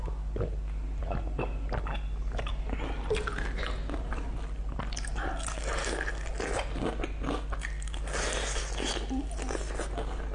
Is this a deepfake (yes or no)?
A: no